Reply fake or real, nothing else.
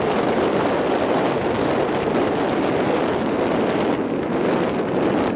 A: real